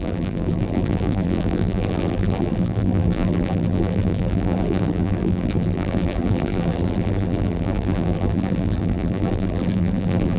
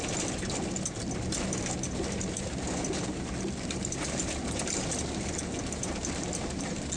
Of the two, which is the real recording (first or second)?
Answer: second